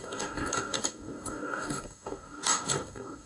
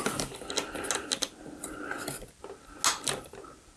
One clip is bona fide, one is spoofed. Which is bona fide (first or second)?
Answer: second